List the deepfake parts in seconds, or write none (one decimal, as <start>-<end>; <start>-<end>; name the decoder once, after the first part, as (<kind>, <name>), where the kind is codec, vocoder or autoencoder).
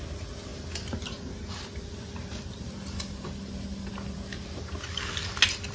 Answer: none